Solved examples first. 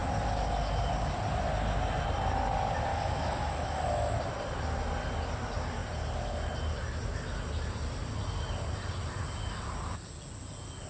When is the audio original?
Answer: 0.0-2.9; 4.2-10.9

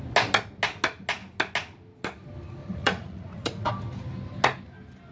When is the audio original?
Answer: 0.0-2.6; 3.7-5.1